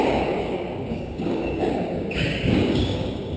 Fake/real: fake